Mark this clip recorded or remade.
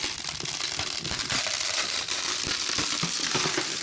recorded